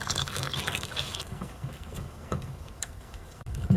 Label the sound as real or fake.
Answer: fake